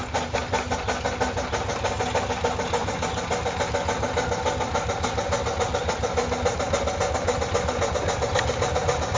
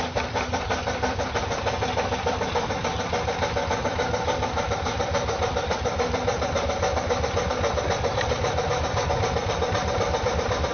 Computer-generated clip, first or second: second